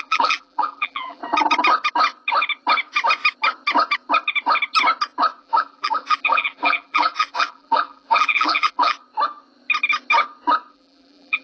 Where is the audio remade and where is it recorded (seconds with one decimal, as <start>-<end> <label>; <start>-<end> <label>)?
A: 0.0-1.2 remade; 1.2-5.4 recorded; 5.4-9.0 remade; 9.0-10.7 recorded; 10.7-11.4 remade